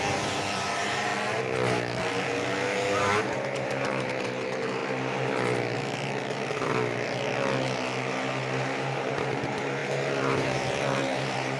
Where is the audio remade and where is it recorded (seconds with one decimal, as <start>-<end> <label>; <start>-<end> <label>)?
0.0-1.1 remade; 1.1-2.9 recorded; 2.9-4.8 remade; 4.8-9.2 recorded; 9.2-11.6 remade

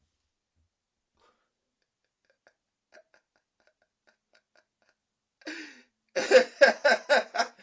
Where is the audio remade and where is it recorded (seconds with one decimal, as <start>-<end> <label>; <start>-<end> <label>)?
0.0-7.6 recorded

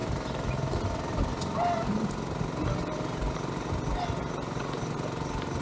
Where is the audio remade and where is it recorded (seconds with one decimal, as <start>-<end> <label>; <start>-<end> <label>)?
0.0-5.6 recorded

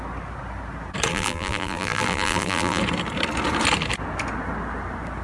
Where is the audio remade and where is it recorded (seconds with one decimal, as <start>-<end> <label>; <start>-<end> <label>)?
0.0-1.1 recorded; 1.1-2.8 remade; 2.8-5.2 recorded

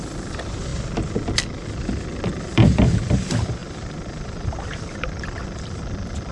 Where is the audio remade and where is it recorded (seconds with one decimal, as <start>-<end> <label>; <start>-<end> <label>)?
0.0-0.7 remade; 0.7-2.3 recorded; 2.3-6.3 remade

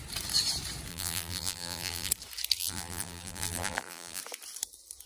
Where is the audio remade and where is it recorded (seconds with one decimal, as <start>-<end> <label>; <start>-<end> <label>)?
0.0-0.9 recorded; 0.9-2.1 remade; 2.1-2.6 recorded; 2.6-4.2 remade; 4.2-5.1 recorded

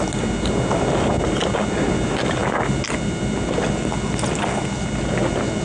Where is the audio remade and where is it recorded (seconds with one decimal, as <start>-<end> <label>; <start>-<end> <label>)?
0.0-5.6 recorded